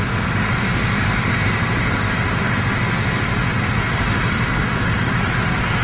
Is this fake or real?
real